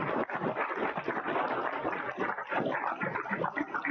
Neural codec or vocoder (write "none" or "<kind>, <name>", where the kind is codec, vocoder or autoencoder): none